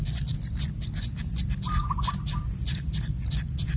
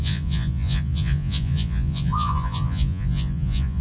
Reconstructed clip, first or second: second